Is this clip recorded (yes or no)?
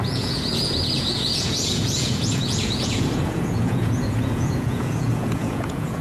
no